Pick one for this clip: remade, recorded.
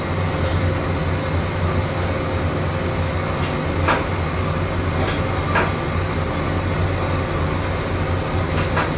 recorded